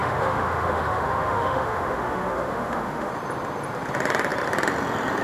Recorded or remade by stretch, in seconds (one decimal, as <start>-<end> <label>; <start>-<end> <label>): 0.0-3.1 remade; 3.1-5.2 recorded